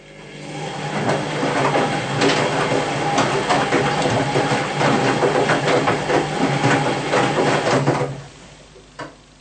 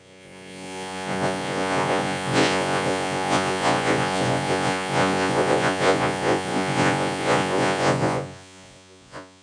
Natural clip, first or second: first